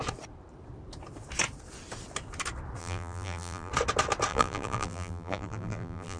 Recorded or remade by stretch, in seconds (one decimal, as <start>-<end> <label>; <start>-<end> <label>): 0.0-2.8 recorded; 2.8-3.7 remade; 3.7-4.3 recorded; 4.3-6.2 remade